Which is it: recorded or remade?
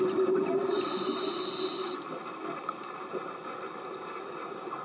recorded